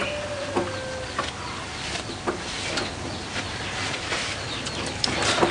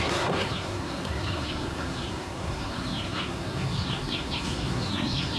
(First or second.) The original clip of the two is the first